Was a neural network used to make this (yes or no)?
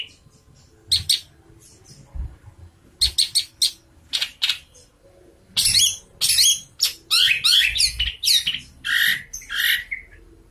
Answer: no